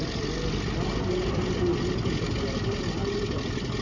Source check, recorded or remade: recorded